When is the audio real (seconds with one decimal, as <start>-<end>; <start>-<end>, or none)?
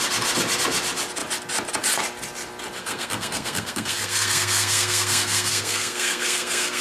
0.0-2.8